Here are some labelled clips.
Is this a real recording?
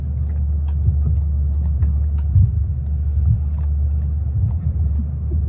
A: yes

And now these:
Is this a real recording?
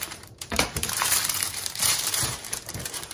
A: no